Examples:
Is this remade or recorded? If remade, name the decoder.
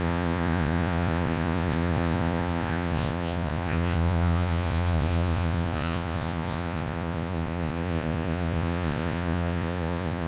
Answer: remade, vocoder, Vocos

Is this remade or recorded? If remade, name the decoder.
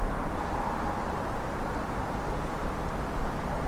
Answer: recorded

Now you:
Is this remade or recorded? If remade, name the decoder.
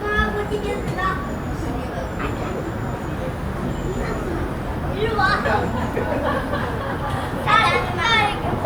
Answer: recorded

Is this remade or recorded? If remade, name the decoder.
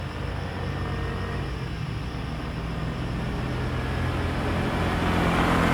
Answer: recorded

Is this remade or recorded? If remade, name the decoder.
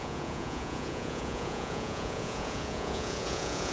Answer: remade, vocoder, Vocos